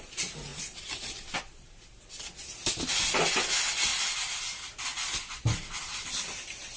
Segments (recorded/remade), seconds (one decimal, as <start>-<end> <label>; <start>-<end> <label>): 0.0-6.8 recorded